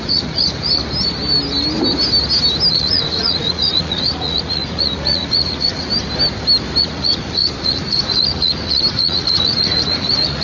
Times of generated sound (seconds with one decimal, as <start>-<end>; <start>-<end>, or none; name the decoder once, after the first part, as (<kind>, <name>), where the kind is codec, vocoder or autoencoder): 0.0-0.8 (vocoder, Vocos); 2.7-5.9; 6.8-10.4